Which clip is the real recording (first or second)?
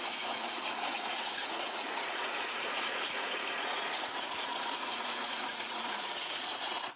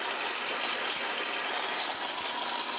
second